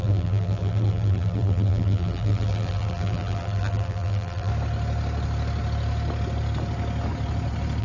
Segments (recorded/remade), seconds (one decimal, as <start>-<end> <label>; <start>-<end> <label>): 0.0-4.5 remade; 4.5-7.8 recorded